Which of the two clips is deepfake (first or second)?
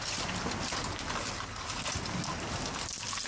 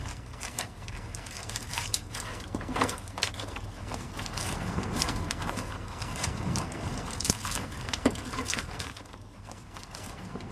second